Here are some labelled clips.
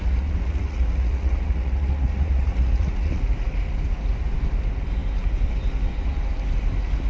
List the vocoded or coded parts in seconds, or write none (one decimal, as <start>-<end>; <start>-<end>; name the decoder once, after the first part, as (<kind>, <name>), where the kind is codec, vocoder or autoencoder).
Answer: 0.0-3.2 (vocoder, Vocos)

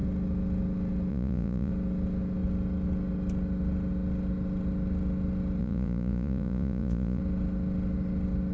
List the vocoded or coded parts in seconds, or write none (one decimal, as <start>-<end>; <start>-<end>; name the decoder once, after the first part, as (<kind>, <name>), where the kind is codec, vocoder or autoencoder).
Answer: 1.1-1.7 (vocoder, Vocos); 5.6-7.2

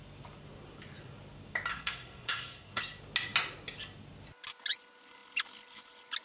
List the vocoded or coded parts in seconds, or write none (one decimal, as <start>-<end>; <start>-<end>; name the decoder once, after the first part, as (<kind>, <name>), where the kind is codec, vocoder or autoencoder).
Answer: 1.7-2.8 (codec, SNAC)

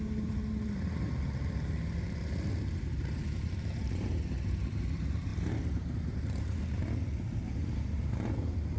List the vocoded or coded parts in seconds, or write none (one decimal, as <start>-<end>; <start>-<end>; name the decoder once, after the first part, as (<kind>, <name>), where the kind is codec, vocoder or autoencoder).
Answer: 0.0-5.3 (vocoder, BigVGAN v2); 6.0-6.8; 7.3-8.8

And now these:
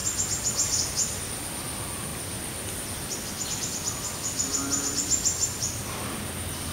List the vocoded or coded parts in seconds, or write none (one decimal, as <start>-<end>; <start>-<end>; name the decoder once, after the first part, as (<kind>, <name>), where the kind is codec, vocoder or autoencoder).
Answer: none

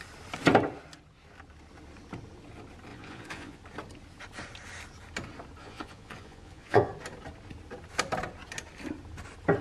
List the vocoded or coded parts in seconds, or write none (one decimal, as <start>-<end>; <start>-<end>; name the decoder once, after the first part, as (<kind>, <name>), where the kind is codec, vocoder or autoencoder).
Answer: 2.9-3.6 (vocoder, Vocos); 5.6-6.9

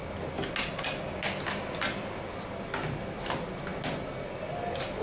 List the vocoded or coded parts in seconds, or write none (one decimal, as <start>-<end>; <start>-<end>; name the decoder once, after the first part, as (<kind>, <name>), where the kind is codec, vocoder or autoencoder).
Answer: none

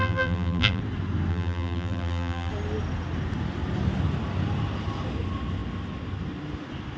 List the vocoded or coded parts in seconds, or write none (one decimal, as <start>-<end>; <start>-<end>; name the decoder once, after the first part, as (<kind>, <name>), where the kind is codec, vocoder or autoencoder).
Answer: 0.0-0.8 (vocoder, BigVGAN v2); 1.3-2.5